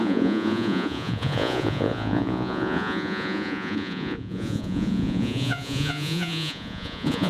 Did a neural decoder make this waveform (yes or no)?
yes